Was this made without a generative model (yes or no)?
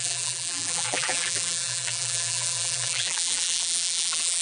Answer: no